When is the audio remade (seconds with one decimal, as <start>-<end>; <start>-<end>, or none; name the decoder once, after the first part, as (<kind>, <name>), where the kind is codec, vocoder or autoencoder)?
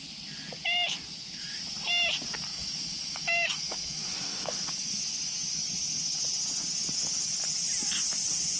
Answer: 2.5-5.0 (autoencoder, DAC-VAE)